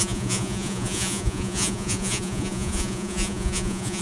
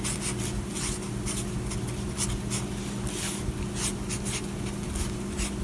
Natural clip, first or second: second